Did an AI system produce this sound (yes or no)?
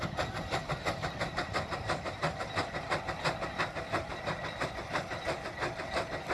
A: no